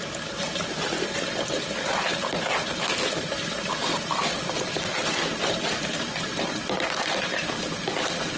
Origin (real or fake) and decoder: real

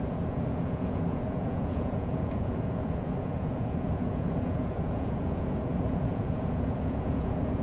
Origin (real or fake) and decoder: fake, vocoder, Vocos